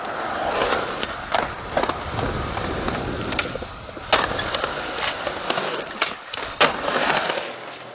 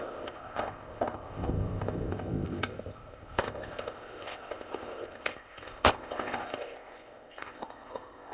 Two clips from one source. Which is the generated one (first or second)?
second